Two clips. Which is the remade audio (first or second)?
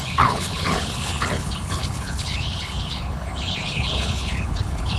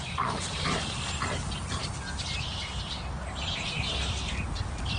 first